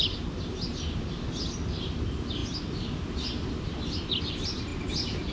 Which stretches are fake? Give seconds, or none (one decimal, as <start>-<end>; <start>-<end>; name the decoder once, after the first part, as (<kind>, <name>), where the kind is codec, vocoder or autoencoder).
none